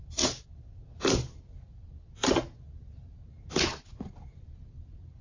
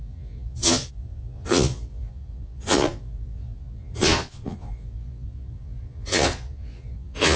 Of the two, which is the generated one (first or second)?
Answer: second